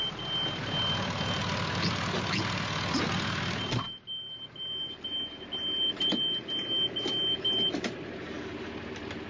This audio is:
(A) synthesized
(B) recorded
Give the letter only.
B